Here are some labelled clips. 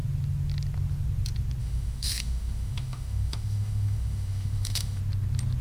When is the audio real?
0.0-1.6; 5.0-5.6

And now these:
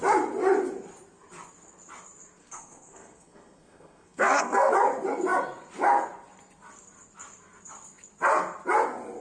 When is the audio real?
0.0-2.4; 4.7-9.2

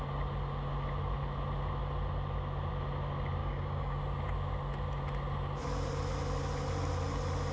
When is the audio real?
0.0-3.4; 4.0-7.5

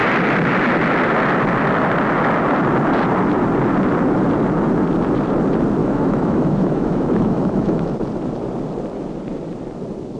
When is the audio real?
0.0-5.8; 7.9-10.2